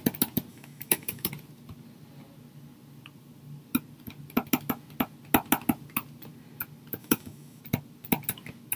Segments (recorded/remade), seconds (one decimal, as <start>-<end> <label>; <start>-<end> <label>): 0.0-0.5 recorded; 0.5-1.3 remade; 1.3-7.0 recorded; 7.0-7.6 remade; 7.6-8.8 recorded